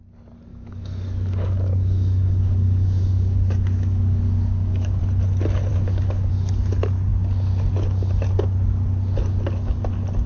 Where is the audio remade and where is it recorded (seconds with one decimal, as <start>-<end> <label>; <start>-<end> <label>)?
0.0-0.5 recorded; 0.5-5.0 remade; 5.0-5.7 recorded; 5.7-6.3 remade; 6.3-10.3 recorded